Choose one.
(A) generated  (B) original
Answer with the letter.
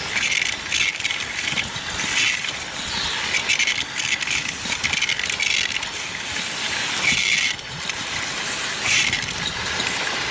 B